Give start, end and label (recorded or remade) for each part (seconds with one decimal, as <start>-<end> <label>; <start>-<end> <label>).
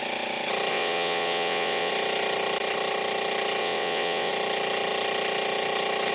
0.0-0.7 recorded; 0.7-1.9 remade; 1.9-3.6 recorded; 3.6-4.3 remade; 4.3-6.1 recorded